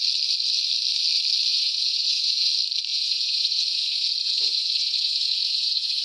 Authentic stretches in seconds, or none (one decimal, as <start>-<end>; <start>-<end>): 0.0-1.5; 2.5-2.9